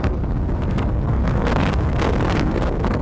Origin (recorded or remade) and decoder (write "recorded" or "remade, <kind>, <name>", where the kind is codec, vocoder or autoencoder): remade, codec, SNAC